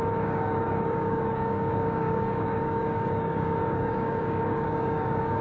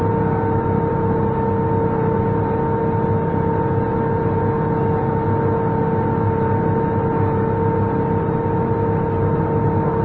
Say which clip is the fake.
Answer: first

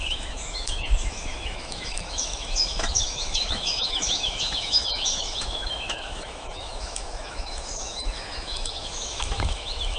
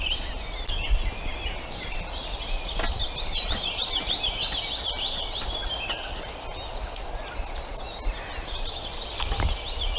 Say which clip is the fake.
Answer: first